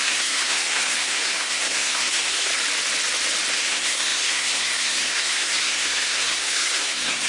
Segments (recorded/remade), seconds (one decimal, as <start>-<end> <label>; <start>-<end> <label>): 0.0-2.5 remade; 2.5-3.5 recorded; 3.5-7.3 remade